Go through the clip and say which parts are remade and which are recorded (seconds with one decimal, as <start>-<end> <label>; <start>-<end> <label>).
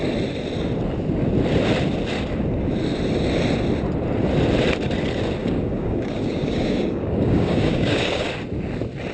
0.0-5.4 recorded; 5.4-8.3 remade; 8.3-9.1 recorded